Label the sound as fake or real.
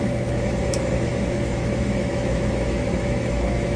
fake